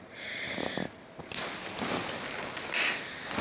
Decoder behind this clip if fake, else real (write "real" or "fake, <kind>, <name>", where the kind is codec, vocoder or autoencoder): real